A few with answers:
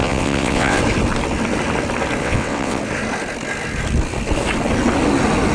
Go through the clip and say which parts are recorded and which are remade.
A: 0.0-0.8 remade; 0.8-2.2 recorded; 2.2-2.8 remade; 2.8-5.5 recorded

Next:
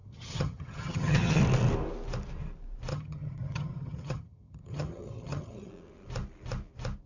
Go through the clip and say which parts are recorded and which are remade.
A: 0.0-1.4 remade; 1.4-2.9 recorded; 2.9-5.7 remade; 5.7-7.1 recorded

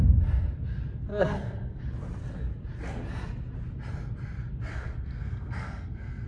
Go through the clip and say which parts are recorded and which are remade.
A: 0.0-1.1 recorded; 1.1-1.8 remade; 1.8-4.7 recorded; 4.7-6.3 remade

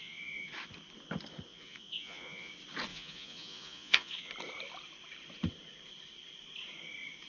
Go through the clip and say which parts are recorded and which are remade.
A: 0.0-0.5 remade; 0.5-1.5 recorded; 1.5-2.5 remade; 2.5-2.9 recorded; 2.9-4.3 remade; 4.3-7.3 recorded

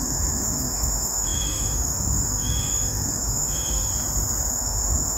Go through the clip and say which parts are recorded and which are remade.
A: 0.0-3.9 remade; 3.9-4.5 recorded; 4.5-5.2 remade